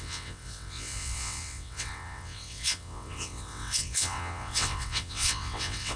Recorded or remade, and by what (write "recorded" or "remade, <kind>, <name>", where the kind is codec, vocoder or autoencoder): remade, vocoder, WaveNeXt